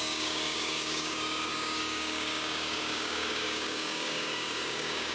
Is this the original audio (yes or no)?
no